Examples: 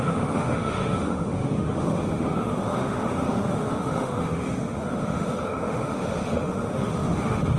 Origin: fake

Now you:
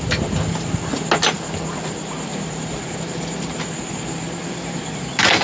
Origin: real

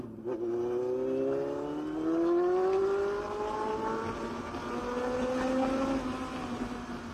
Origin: real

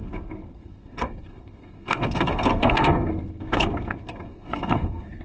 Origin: fake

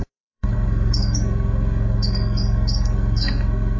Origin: fake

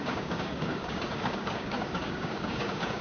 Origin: fake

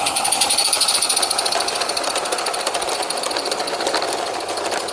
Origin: real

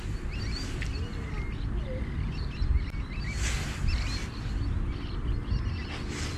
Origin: real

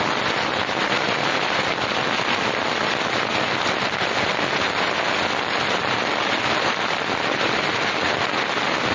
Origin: real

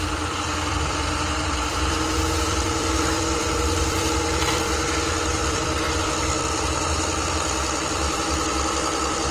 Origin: fake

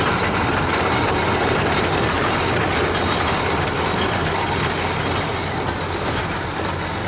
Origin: real